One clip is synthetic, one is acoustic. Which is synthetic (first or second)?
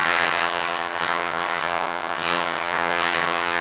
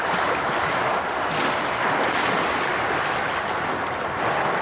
first